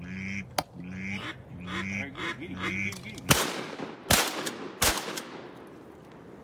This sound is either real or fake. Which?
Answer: real